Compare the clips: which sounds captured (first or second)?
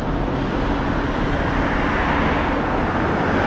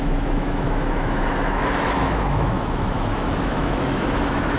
first